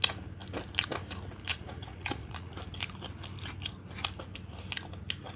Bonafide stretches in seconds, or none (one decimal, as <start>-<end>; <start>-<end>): 0.0-1.5; 2.5-5.4

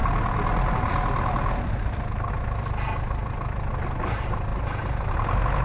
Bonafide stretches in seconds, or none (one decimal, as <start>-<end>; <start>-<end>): 0.0-5.6